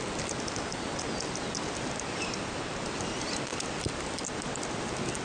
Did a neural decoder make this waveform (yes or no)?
no